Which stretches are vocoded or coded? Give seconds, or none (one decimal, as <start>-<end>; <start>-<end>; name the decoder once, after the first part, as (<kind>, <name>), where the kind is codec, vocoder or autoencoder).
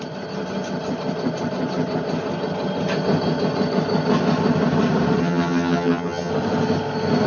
5.2-6.3 (vocoder, HiFi-GAN)